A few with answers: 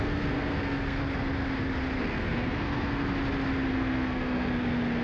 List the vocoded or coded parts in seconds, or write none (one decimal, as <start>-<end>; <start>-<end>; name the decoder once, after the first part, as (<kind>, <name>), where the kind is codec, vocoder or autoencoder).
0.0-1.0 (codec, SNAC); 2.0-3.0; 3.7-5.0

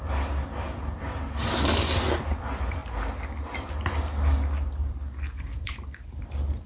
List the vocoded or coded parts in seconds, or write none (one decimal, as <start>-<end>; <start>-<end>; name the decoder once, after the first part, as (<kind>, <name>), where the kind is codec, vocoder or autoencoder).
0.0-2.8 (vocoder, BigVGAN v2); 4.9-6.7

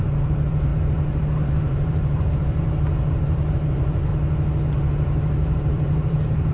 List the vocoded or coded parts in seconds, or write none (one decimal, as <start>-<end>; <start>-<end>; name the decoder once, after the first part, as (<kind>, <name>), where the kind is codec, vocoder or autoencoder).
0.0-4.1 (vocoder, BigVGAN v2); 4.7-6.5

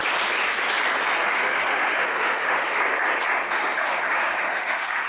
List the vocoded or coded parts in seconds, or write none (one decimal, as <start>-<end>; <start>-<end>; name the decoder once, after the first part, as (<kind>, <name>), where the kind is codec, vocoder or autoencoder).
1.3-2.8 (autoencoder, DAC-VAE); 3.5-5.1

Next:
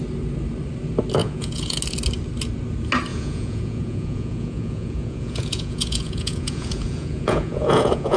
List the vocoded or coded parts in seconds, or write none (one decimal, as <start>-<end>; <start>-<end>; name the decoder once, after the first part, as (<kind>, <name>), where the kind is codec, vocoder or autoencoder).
1.2-1.8 (vocoder, Vocos); 3.1-8.2

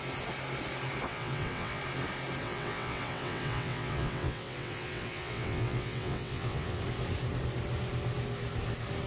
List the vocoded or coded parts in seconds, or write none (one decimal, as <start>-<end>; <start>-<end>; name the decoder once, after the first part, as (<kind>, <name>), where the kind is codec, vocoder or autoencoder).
1.1-1.8 (vocoder, WaveNeXt); 2.4-6.8